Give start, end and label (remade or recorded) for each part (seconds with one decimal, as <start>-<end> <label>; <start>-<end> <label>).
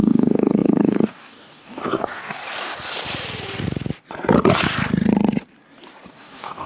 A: 0.0-2.4 remade; 2.4-6.1 recorded; 6.1-6.7 remade